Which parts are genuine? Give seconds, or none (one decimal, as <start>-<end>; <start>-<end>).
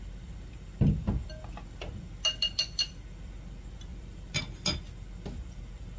0.0-3.9; 4.4-6.0